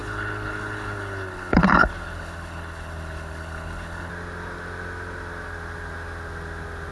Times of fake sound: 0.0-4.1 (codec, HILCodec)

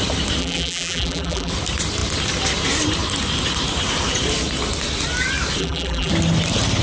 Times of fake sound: 0.4-1.5 (vocoder, BigVGAN v2); 5.6-6.1